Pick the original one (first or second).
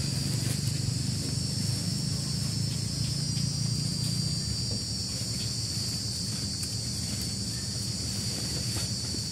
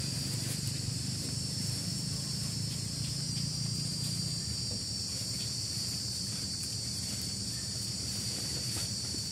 first